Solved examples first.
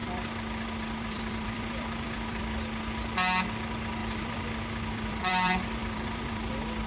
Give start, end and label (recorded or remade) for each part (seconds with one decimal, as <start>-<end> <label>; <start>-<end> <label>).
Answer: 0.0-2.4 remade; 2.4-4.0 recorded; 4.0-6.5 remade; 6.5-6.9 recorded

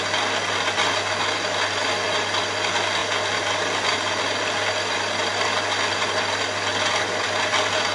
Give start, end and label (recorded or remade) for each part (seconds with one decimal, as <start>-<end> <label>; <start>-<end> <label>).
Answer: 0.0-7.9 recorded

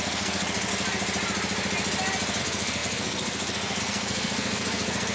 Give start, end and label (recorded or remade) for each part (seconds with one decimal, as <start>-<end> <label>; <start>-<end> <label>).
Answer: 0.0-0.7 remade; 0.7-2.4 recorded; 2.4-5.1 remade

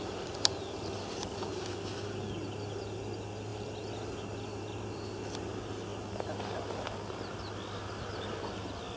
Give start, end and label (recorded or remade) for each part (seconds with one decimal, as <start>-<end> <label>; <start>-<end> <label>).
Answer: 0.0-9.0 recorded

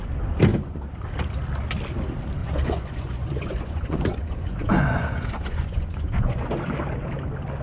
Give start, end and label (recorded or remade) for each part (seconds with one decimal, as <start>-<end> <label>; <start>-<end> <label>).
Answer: 0.0-0.5 recorded; 0.5-1.0 remade; 1.0-2.4 recorded; 2.4-6.5 remade; 6.5-7.6 recorded

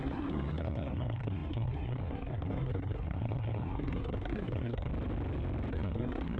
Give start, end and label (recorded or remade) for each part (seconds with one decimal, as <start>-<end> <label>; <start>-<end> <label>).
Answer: 0.0-4.9 remade; 4.9-5.7 recorded; 5.7-6.4 remade

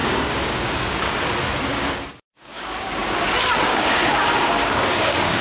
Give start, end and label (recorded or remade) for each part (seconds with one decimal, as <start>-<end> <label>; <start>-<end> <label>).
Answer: 0.0-1.2 remade; 1.2-1.7 recorded; 1.7-3.3 remade; 3.3-3.7 recorded; 3.7-5.4 remade